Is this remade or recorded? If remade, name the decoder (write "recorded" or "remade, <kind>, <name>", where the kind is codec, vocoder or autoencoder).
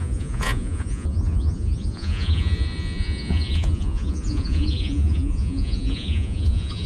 remade, vocoder, Vocos